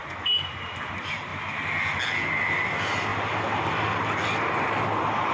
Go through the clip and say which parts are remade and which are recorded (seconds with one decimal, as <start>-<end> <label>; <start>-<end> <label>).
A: 0.0-5.3 recorded